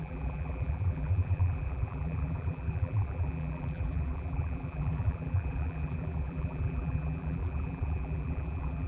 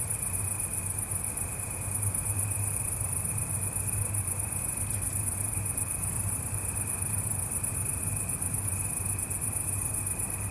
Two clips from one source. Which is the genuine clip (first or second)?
second